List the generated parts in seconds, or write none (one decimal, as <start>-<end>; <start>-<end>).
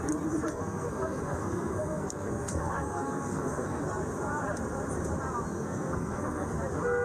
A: 0.5-3.8; 5.5-6.5